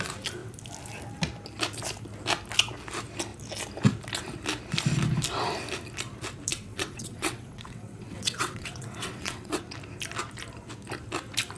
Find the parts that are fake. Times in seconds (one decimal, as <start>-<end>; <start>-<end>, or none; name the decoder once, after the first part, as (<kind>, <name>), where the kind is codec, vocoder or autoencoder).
6.5-9.6 (vocoder, WaveNeXt)